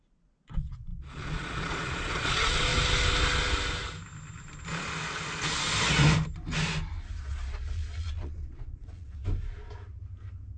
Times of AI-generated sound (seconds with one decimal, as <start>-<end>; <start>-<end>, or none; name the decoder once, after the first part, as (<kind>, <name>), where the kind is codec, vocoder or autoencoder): 0.0-2.7 (vocoder, Vocos); 7.2-9.2